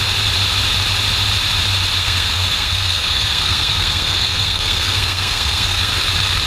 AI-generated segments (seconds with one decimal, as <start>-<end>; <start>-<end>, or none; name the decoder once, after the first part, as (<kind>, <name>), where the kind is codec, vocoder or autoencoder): 2.0-5.9 (codec, SNAC)